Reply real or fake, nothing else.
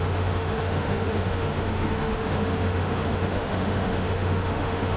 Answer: fake